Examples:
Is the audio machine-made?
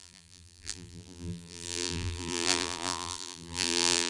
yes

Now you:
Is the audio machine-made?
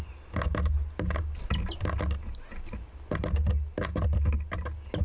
no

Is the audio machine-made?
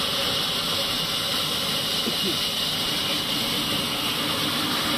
no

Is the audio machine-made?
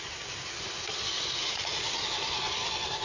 no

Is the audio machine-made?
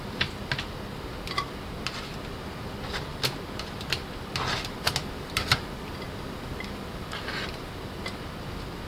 no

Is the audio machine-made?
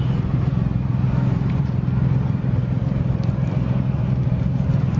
yes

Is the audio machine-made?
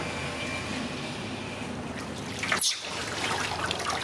no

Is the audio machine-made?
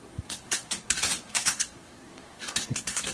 yes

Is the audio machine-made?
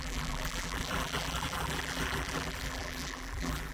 yes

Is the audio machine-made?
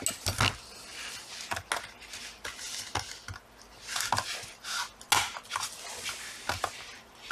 no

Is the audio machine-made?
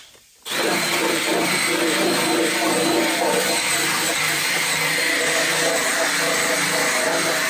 yes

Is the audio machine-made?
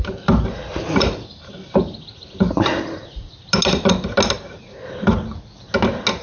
no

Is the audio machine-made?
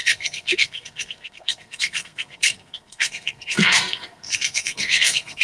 yes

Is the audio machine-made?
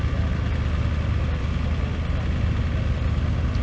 no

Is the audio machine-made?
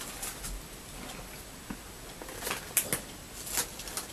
no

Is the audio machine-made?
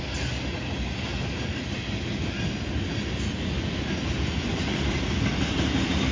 no